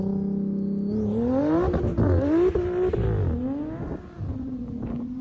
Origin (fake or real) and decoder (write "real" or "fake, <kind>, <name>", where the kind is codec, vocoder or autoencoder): real